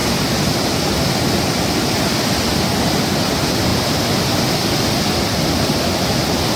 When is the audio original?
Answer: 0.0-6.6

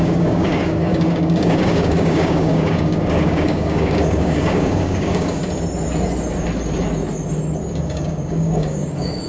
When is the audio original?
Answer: 5.4-7.7